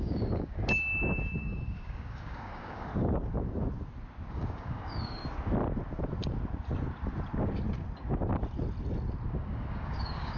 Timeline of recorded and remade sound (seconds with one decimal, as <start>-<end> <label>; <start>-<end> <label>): 0.0-2.9 remade; 2.9-4.3 recorded; 4.3-5.2 remade; 5.2-9.3 recorded; 9.3-10.4 remade